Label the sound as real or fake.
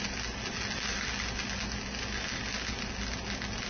real